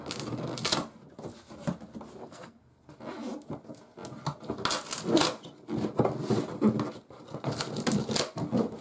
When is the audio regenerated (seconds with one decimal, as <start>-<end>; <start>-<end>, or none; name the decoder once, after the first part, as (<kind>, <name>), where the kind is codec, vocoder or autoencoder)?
2.2-2.7 (codec, SNAC)